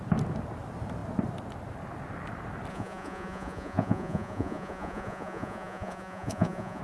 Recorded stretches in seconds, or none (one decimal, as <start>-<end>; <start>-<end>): 0.0-2.7